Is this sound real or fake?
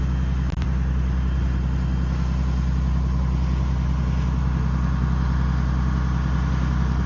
real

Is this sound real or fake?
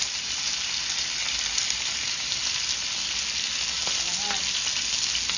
real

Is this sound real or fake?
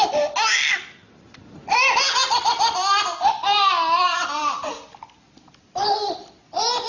real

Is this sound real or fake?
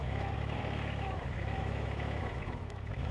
fake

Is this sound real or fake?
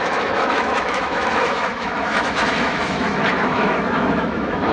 fake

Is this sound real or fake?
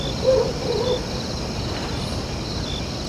real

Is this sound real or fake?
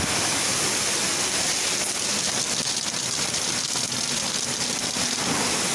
real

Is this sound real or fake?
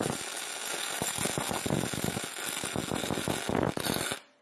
real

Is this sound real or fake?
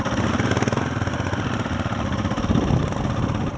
real